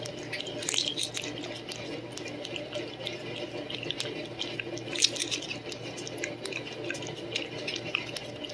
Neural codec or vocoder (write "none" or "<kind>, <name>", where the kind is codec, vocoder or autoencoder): none